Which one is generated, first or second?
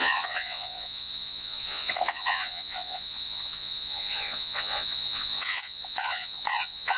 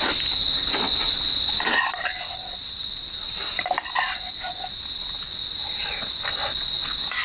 first